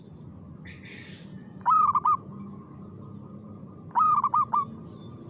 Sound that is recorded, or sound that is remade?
recorded